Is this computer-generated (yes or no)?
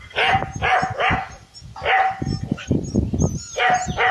no